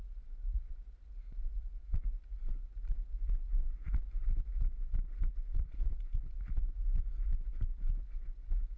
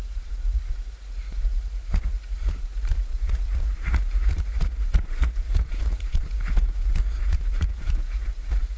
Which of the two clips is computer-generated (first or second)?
second